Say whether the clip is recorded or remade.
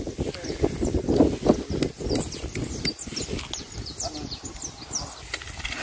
recorded